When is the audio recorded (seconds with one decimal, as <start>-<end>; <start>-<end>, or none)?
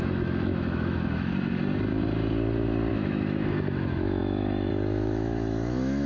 1.6-2.9